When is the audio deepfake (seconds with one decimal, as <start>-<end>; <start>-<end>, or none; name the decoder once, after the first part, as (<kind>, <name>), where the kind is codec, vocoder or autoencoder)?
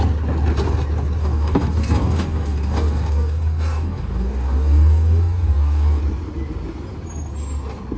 1.2-6.0 (codec, DAC)